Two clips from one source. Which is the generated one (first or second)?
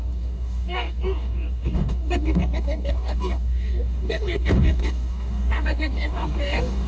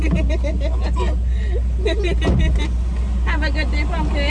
first